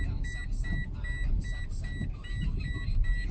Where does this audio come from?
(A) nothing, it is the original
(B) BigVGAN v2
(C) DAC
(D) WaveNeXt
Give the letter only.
A